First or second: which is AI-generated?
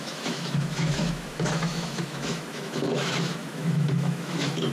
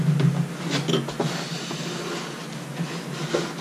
first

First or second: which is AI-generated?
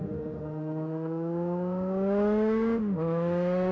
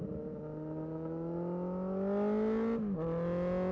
first